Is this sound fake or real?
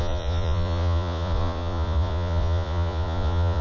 fake